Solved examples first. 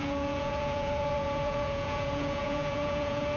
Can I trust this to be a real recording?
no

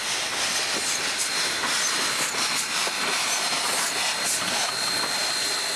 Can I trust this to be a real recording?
yes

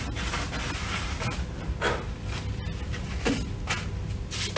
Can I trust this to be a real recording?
yes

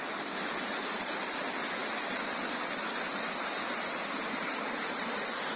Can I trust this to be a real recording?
yes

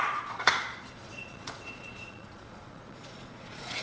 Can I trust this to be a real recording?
no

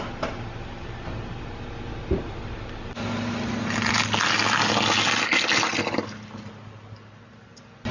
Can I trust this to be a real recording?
yes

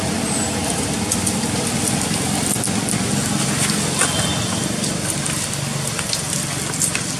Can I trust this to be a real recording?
yes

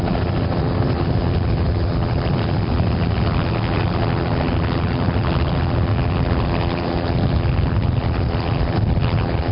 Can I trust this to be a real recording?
yes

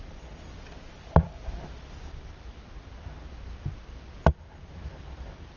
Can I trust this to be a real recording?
yes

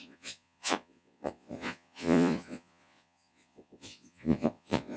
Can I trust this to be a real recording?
no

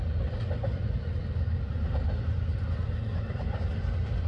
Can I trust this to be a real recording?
yes